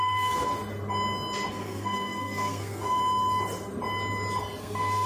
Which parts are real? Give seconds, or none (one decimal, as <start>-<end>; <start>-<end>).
0.5-1.5; 3.0-4.6